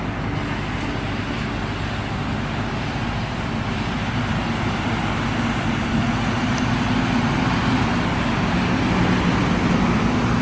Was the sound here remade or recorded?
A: recorded